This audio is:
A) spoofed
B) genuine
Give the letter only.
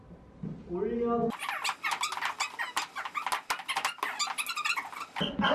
B